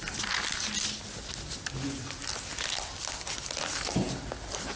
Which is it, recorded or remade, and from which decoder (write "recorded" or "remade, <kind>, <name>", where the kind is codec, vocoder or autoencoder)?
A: recorded